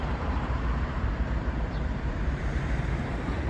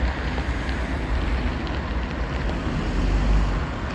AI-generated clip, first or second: first